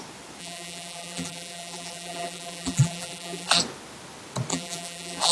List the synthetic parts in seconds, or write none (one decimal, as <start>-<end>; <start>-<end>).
0.4-3.6; 4.5-5.3

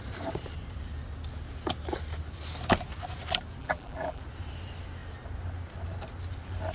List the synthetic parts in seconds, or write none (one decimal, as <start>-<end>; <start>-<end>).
3.6-4.2

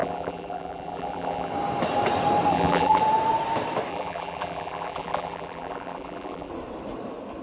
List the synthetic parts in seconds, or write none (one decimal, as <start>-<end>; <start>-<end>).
0.0-1.5; 2.5-3.0; 3.9-6.5